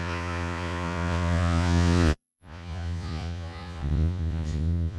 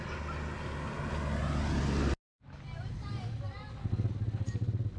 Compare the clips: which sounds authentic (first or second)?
second